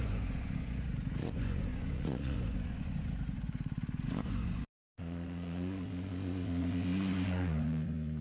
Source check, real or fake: fake